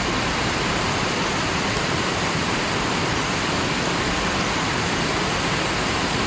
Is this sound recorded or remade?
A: recorded